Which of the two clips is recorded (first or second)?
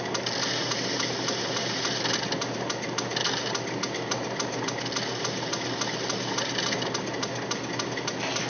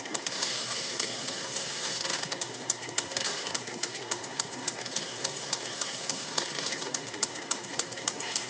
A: first